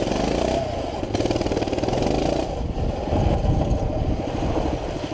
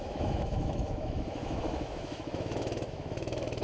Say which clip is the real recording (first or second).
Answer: first